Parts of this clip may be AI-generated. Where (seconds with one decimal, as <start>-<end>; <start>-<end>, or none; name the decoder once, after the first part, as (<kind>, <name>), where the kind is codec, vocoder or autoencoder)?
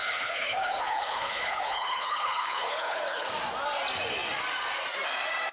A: 0.0-3.3 (codec, HILCodec)